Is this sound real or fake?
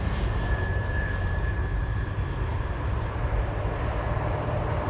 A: fake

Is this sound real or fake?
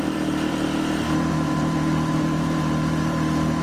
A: fake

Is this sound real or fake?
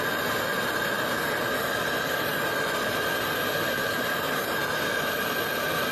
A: real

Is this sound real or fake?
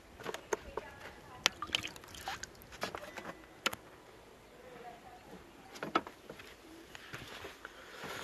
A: real